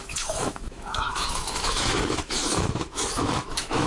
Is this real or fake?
fake